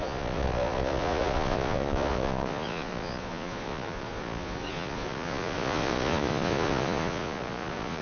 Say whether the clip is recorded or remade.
remade